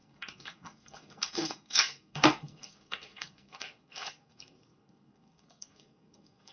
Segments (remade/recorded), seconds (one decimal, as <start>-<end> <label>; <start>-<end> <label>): 0.0-6.5 remade